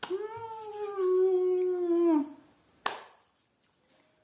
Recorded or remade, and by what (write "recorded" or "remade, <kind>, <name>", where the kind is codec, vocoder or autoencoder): recorded